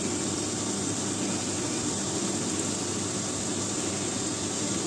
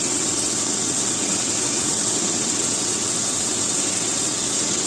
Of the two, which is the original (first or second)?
first